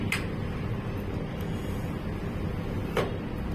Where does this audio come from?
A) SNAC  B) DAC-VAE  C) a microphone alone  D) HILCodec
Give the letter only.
C